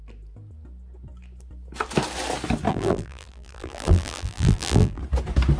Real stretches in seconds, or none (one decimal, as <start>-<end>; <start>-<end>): 0.0-2.7; 5.0-5.6